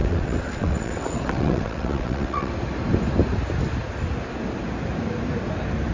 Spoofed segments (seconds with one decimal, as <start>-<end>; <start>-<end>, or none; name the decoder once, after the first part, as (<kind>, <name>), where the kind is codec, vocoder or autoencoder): 0.0-2.5 (vocoder, WaveNeXt)